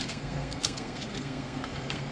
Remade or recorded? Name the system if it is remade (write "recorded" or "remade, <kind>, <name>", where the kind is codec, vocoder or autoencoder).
remade, codec, SNAC